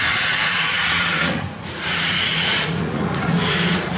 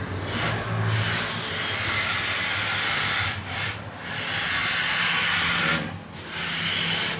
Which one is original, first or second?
second